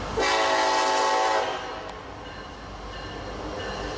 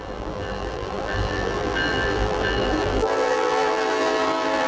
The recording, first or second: first